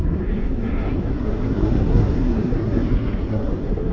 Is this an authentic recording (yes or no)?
no